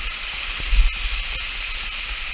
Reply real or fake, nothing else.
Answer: real